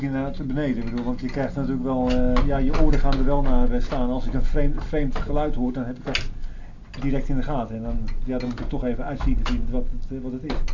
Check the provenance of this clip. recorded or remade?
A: recorded